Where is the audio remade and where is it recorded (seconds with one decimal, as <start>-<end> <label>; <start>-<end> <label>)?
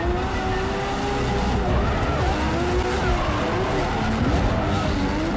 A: 0.0-5.4 recorded